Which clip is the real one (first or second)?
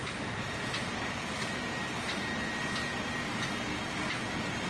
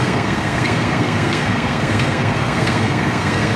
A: first